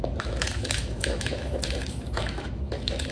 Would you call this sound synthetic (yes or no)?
yes